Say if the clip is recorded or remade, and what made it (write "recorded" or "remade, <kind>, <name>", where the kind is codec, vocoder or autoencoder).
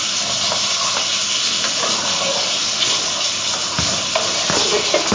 recorded